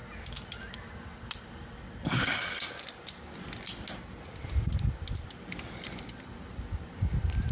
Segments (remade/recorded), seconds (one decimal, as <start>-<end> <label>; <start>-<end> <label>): 0.0-7.5 recorded